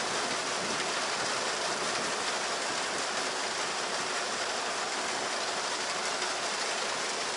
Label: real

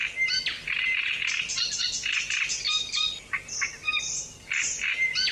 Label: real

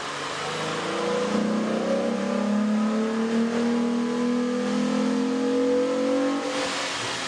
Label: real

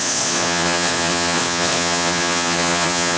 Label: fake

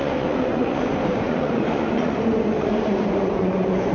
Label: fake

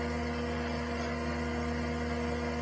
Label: real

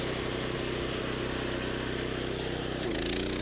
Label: real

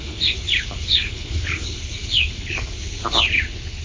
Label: fake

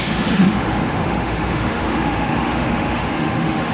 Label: fake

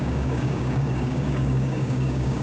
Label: fake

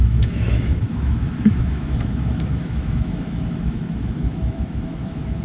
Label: fake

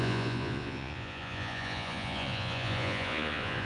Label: fake